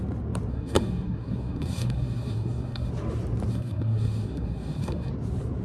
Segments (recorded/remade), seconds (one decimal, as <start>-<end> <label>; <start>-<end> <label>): 0.0-0.5 recorded; 0.5-2.9 remade; 2.9-3.5 recorded; 3.5-5.1 remade; 5.1-5.6 recorded